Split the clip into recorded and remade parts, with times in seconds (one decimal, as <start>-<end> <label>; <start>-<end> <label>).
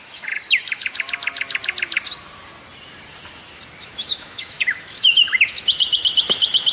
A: 0.0-0.6 remade; 0.6-3.8 recorded; 3.8-6.7 remade